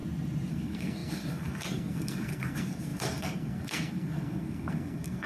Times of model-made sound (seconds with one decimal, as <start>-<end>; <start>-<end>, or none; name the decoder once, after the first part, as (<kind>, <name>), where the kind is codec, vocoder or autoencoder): 0.5-5.3 (codec, SNAC)